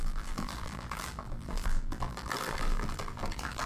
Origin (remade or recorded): remade